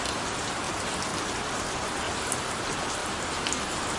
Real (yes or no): yes